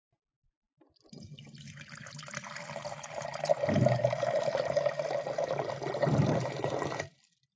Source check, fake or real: real